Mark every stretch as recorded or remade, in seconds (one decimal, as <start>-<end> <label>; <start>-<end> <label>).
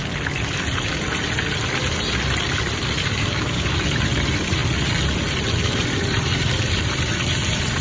0.0-3.0 recorded; 3.0-3.8 remade; 3.8-7.8 recorded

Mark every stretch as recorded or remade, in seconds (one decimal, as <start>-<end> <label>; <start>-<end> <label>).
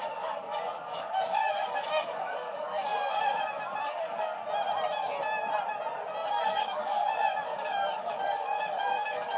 0.0-4.4 remade; 4.4-6.3 recorded; 6.3-9.4 remade